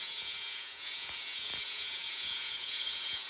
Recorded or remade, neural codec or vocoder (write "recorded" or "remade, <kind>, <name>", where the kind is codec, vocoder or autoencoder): remade, vocoder, Vocos